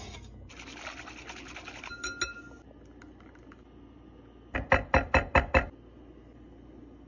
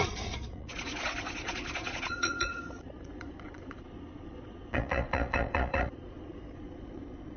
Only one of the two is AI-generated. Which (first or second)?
second